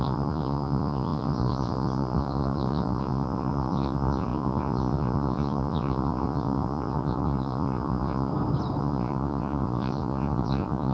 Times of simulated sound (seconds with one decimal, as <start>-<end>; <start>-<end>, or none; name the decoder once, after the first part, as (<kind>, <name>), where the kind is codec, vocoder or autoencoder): 0.0-8.3 (vocoder, Vocos); 8.8-10.9